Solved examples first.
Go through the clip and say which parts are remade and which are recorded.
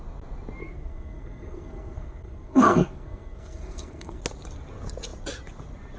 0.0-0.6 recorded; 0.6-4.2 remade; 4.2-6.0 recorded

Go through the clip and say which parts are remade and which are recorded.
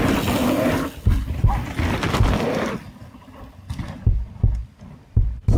0.0-5.6 recorded